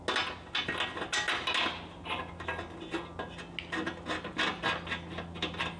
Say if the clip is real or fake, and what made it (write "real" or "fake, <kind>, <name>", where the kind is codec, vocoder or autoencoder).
real